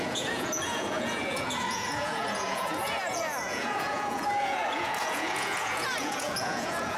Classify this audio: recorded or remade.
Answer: remade